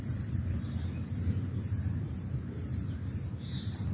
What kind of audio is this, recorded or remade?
remade